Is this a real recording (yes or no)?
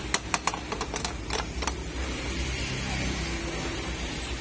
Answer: yes